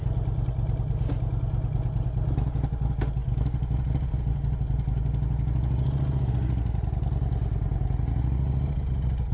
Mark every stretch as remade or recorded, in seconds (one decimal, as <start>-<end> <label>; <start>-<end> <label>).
0.0-9.3 recorded